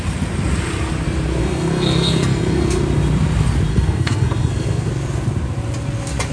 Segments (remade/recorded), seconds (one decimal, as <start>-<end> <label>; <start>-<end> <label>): 0.0-1.4 recorded; 1.4-2.8 remade; 2.8-3.7 recorded; 3.7-4.9 remade; 4.9-6.3 recorded